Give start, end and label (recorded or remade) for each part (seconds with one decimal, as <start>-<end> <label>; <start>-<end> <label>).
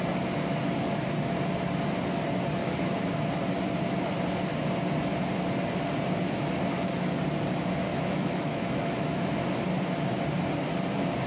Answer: 0.0-2.6 recorded; 2.6-3.3 remade; 3.3-7.9 recorded; 7.9-9.4 remade; 9.4-11.3 recorded